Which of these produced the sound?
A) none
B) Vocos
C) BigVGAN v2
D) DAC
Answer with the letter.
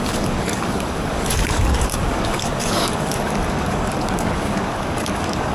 D